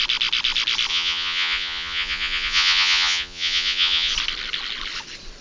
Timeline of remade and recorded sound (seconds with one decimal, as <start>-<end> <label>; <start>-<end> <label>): 0.0-0.9 recorded; 0.9-4.1 remade; 4.1-5.4 recorded